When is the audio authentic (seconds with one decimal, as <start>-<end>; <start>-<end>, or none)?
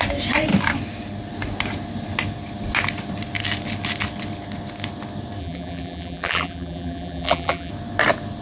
0.0-5.4; 7.7-8.4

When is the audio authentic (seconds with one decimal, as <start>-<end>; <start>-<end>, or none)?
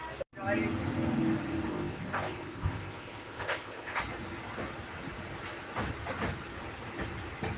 0.0-1.7; 4.0-7.6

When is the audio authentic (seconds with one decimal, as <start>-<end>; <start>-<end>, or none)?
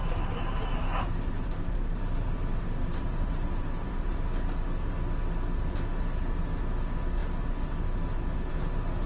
4.1-9.1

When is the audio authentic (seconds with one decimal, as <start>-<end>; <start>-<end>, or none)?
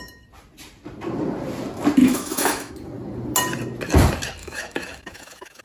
0.0-2.0; 2.7-4.4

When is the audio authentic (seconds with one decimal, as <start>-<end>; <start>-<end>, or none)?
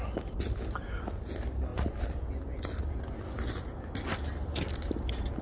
0.0-5.4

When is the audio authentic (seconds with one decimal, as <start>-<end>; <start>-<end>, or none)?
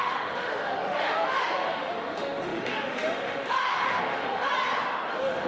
4.5-5.1